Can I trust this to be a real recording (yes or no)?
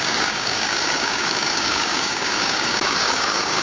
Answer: no